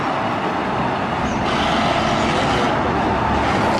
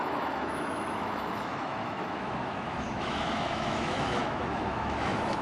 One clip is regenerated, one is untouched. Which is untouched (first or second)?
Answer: first